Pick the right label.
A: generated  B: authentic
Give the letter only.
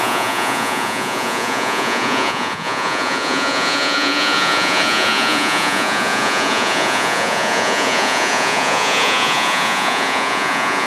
A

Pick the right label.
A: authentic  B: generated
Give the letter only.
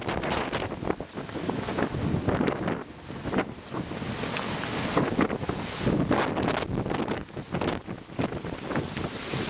A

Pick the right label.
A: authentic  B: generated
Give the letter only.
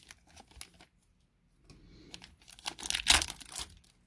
A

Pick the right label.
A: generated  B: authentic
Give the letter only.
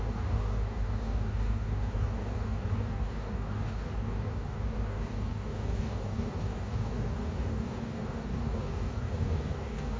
A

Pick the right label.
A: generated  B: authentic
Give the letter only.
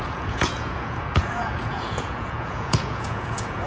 A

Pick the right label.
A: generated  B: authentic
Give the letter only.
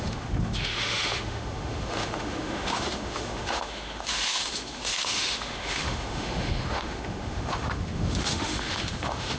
A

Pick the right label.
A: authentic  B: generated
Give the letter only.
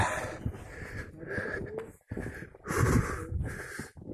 A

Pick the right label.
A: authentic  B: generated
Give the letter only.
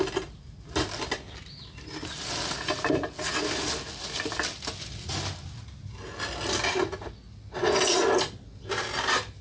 A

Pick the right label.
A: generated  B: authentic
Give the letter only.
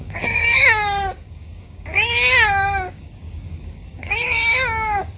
A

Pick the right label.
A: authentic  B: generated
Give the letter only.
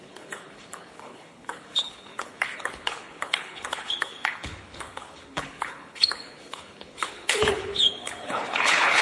B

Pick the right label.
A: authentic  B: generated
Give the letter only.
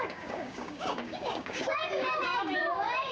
B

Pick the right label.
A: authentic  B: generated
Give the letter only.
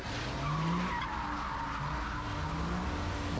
A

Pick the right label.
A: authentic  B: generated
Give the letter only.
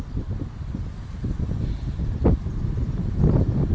A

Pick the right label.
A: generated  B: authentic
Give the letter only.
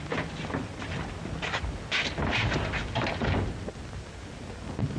B